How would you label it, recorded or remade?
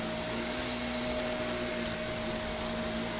recorded